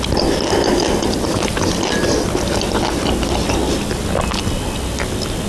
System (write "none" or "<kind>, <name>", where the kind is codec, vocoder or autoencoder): none